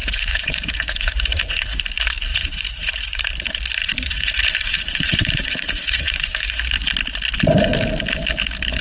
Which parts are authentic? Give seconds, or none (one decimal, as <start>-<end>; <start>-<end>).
1.8-2.3; 3.2-3.8; 6.6-8.8